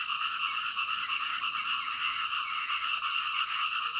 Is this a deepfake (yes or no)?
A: yes